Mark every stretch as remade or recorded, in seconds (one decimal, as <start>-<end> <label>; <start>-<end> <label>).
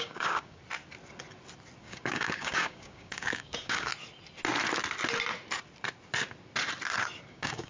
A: 0.0-0.6 remade; 0.6-1.8 recorded; 1.8-3.9 remade; 3.9-7.3 recorded; 7.3-7.7 remade